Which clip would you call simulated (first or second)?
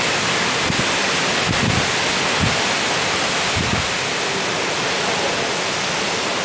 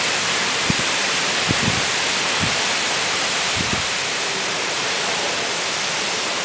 second